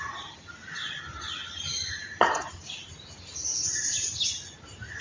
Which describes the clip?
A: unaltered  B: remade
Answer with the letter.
A